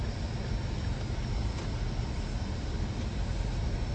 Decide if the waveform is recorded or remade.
recorded